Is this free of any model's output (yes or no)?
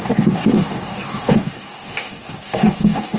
no